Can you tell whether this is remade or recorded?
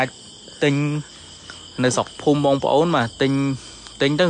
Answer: recorded